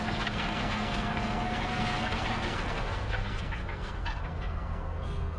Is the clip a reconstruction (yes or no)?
yes